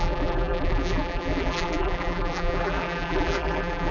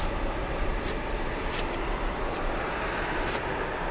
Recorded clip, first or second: second